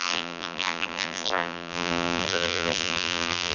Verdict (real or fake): fake